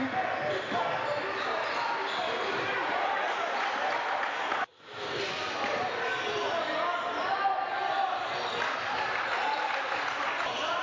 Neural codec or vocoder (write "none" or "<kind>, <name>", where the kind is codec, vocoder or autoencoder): none